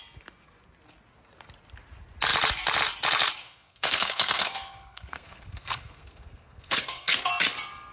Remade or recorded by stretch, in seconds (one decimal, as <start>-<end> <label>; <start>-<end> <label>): 0.0-3.4 recorded; 3.4-7.3 remade; 7.3-7.9 recorded